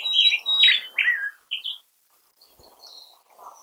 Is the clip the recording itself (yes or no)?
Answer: yes